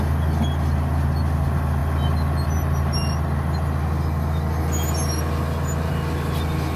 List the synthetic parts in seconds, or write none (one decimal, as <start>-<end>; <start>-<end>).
none